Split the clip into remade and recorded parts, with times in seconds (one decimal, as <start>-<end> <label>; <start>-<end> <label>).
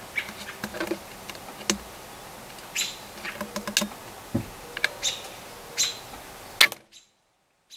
0.0-7.8 recorded